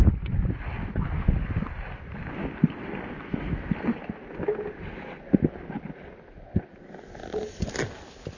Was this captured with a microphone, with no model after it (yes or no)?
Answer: yes